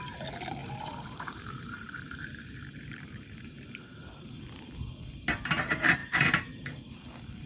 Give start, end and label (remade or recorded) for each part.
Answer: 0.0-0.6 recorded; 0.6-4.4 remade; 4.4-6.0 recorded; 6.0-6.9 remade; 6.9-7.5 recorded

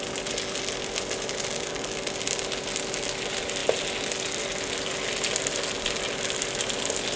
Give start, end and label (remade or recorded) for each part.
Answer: 0.0-7.2 recorded

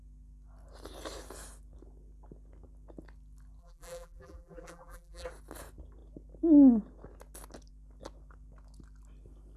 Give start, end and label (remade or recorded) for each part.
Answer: 0.0-3.6 recorded; 3.6-5.3 remade; 5.3-9.6 recorded

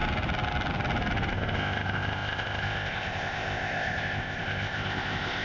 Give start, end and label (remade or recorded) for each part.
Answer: 0.0-1.3 recorded; 1.3-5.4 remade

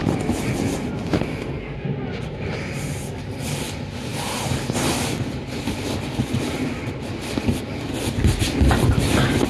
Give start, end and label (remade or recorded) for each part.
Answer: 0.0-9.5 recorded